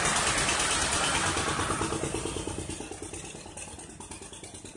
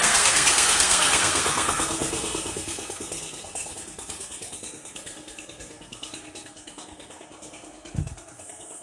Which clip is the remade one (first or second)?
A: second